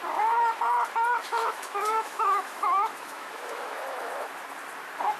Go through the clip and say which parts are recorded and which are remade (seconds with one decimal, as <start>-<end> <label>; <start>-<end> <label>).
0.0-1.2 recorded; 1.2-4.3 remade; 4.3-5.2 recorded